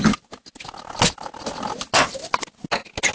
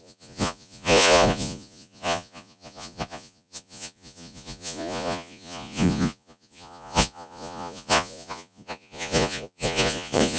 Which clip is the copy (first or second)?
second